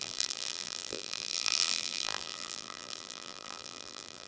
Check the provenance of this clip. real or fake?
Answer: fake